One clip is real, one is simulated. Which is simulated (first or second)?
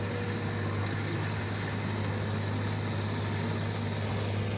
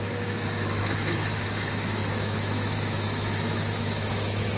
second